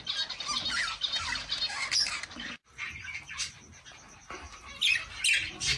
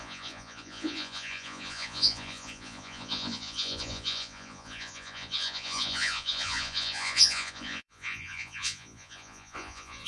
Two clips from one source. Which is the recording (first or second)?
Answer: first